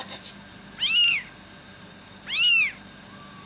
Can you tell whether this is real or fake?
real